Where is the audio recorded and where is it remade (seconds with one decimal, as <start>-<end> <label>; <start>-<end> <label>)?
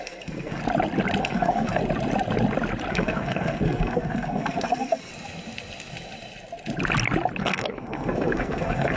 0.0-0.6 remade; 0.6-1.2 recorded; 1.2-1.8 remade; 1.8-2.9 recorded; 2.9-5.1 remade; 5.1-7.4 recorded; 7.4-9.0 remade